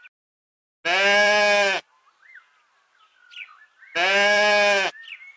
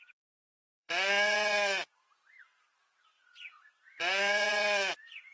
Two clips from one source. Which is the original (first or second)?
first